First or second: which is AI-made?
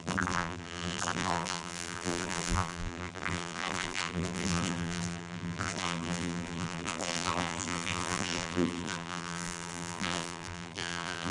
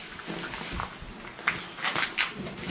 first